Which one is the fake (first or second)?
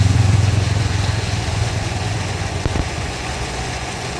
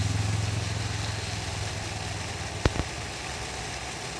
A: first